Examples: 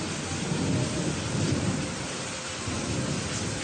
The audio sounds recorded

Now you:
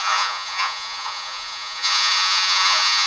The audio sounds remade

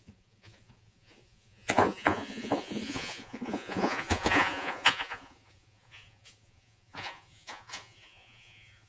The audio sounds remade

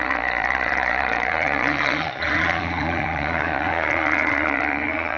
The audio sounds remade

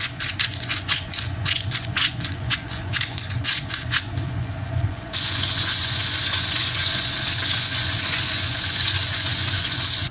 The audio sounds remade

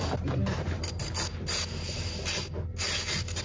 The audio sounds recorded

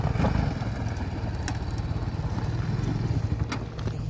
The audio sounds recorded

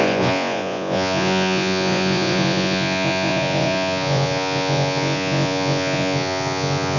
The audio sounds remade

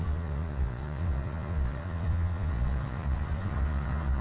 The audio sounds remade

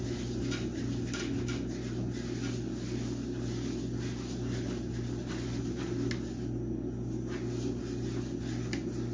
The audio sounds recorded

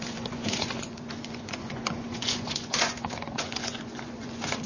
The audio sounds remade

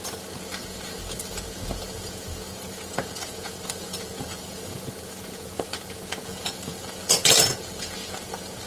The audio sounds remade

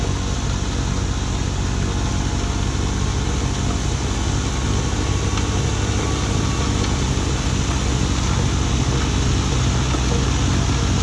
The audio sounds recorded